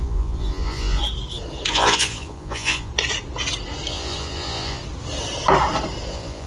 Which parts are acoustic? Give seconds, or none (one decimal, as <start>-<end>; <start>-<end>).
1.0-1.7; 2.9-3.9; 4.8-6.1